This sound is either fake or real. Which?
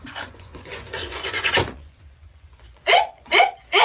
fake